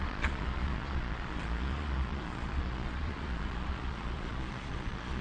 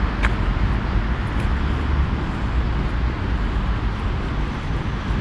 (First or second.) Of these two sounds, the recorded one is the second